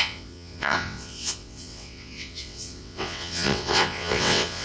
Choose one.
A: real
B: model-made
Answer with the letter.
B